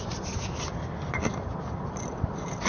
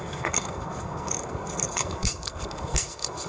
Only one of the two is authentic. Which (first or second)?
first